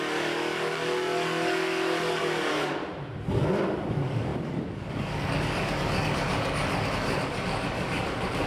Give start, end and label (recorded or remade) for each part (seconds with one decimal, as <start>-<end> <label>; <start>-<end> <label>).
0.0-2.8 remade; 2.8-3.9 recorded; 3.9-8.5 remade